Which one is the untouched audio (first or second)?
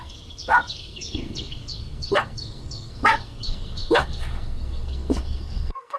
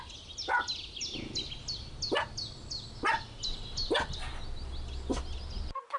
second